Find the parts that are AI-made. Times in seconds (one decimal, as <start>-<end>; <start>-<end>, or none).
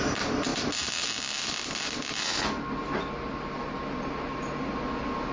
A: none